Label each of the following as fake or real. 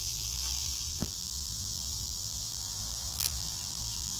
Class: fake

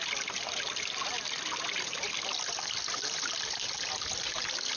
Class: real